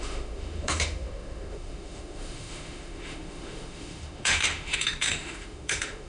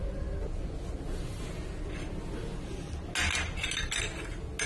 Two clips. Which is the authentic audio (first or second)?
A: second